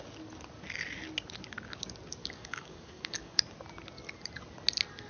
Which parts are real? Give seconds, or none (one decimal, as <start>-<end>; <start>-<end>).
0.0-2.2; 3.4-5.1